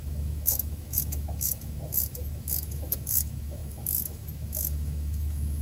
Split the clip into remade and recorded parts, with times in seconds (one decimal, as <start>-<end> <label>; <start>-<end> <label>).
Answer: 0.0-5.6 remade